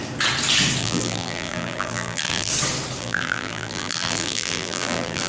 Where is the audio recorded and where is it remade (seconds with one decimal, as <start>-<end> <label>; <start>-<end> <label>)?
0.0-0.8 recorded; 0.8-2.5 remade; 2.5-3.0 recorded; 3.0-5.3 remade